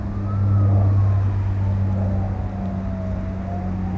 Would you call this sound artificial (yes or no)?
no